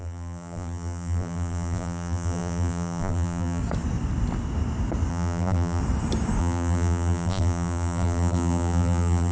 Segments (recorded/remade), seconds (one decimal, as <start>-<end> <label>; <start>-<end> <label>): 0.0-3.6 remade; 3.6-5.1 recorded; 5.1-5.8 remade; 5.8-6.4 recorded; 6.4-9.3 remade